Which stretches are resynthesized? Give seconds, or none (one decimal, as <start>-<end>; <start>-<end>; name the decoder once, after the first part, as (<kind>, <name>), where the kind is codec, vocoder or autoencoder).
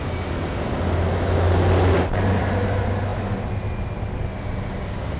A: none